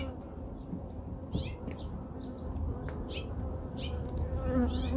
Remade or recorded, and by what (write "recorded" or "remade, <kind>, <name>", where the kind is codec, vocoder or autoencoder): recorded